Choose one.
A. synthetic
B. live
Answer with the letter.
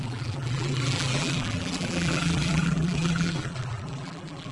A